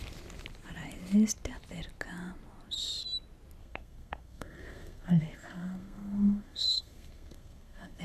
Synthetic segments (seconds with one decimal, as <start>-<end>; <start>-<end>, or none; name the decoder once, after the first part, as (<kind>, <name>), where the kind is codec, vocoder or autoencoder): 3.6-8.0 (codec, SNAC)